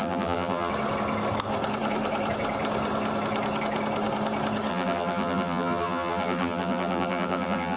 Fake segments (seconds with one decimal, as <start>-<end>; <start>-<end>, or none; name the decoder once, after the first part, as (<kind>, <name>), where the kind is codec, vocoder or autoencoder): 0.0-0.7 (vocoder, BigVGAN v2); 4.7-7.8